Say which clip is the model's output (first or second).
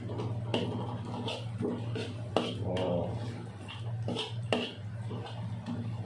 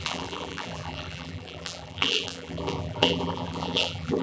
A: second